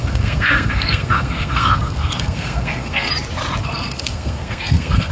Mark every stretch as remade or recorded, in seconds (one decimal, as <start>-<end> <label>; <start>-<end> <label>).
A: 0.0-3.1 remade; 3.1-3.6 recorded; 3.6-5.1 remade